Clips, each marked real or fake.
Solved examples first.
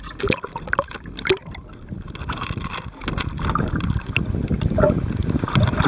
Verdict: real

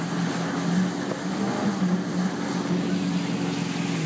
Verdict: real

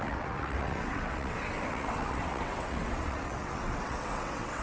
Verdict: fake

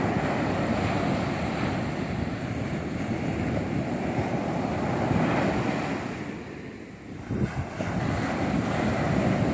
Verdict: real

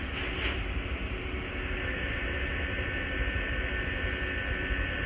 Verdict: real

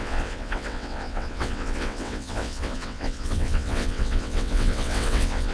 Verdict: fake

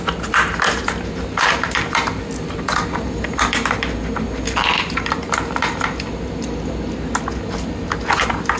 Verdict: real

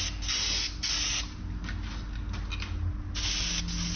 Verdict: real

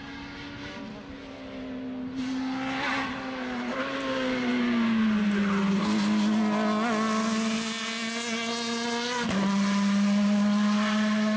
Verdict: real